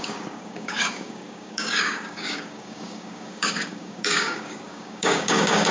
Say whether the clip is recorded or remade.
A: remade